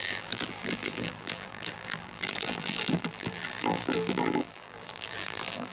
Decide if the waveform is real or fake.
fake